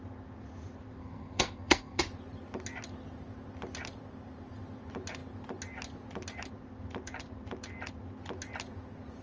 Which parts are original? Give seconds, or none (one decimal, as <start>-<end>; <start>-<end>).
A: 0.0-1.0; 2.0-9.2